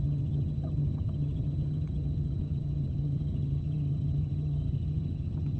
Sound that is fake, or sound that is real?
fake